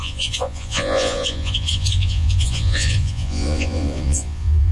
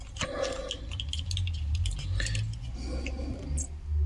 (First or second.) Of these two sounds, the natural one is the second